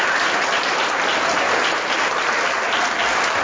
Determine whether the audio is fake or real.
real